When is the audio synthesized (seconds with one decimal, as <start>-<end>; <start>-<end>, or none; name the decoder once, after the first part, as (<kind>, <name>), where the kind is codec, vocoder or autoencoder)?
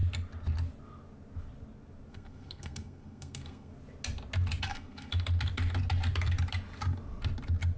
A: 2.1-3.7 (codec, SNAC); 4.6-5.1